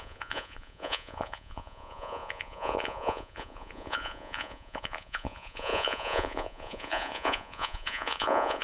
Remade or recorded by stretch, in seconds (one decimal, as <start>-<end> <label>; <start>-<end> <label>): 0.0-8.6 remade